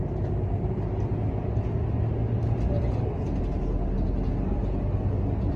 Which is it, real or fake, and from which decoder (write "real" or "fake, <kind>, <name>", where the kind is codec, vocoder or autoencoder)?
real